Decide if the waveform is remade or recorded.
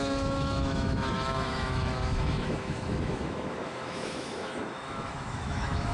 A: remade